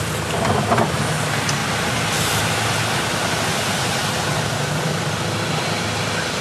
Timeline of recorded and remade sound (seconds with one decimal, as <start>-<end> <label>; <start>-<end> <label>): 0.0-6.4 recorded